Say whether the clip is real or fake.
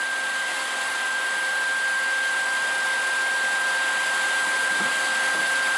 fake